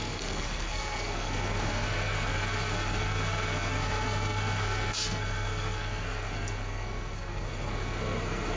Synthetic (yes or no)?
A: yes